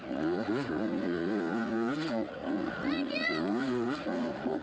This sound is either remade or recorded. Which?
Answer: remade